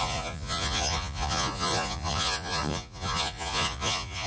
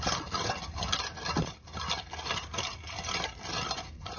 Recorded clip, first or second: second